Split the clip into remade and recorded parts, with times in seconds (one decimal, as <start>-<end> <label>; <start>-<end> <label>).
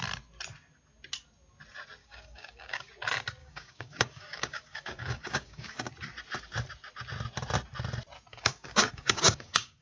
0.0-2.0 recorded; 2.0-2.9 remade; 2.9-3.4 recorded; 3.4-5.9 remade; 5.9-8.3 recorded; 8.3-9.8 remade